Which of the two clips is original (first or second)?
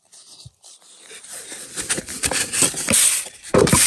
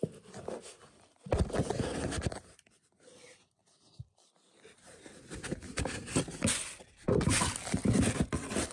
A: second